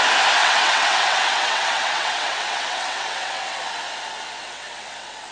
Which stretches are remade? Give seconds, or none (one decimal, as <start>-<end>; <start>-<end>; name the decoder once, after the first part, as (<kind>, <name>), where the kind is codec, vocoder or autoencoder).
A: 0.4-3.6 (vocoder, WaveNeXt); 4.4-5.3